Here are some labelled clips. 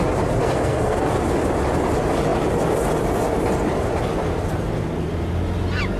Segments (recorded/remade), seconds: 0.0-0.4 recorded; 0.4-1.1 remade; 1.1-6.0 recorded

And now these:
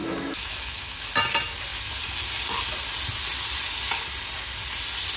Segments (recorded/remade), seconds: 0.0-1.1 remade; 1.1-5.2 recorded

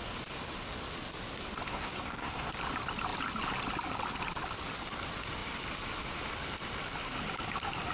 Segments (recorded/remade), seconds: 0.0-1.7 recorded; 1.7-2.5 remade; 2.5-7.9 recorded